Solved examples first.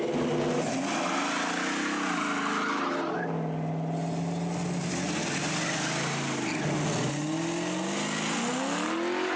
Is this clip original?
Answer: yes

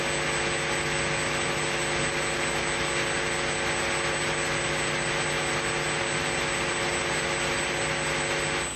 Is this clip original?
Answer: yes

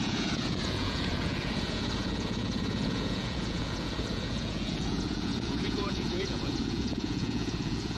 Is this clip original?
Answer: no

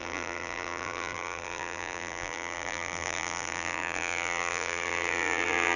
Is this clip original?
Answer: no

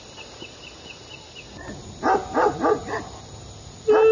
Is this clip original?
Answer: yes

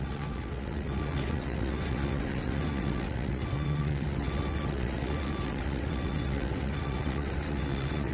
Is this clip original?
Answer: no